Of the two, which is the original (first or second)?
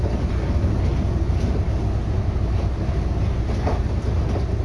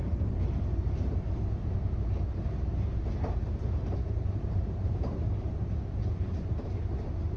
first